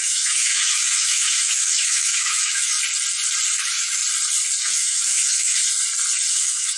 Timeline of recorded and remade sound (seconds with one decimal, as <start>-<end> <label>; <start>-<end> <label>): 0.0-2.7 remade; 2.7-3.6 recorded; 3.6-4.0 remade; 4.0-4.6 recorded; 4.6-5.6 remade; 5.6-6.3 recorded; 6.3-6.8 remade